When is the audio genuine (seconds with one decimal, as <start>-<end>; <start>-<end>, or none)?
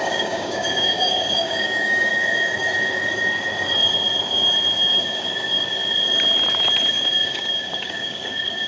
2.1-5.0; 5.8-6.9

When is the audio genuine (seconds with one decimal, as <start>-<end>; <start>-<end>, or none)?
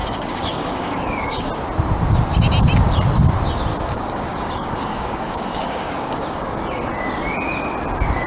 1.5-3.7; 6.6-8.3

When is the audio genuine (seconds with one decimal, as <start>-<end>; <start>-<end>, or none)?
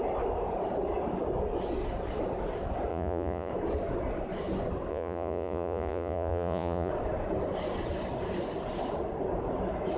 0.0-2.9; 3.5-4.9; 6.9-10.0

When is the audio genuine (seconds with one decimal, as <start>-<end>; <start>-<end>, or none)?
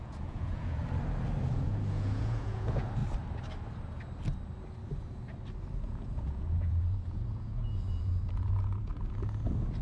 0.8-1.5; 3.0-5.8; 8.9-9.8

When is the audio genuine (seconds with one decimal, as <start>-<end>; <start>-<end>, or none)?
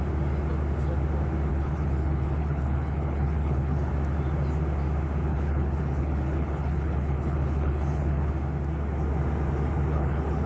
0.0-1.5; 3.9-5.3; 8.3-9.9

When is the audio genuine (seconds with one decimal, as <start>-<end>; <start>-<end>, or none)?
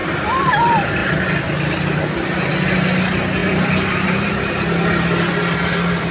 0.5-3.4; 4.3-6.1